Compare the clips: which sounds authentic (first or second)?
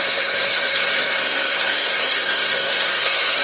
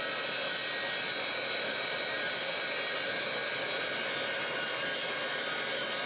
second